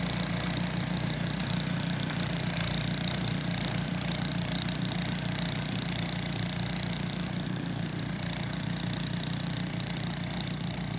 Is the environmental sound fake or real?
fake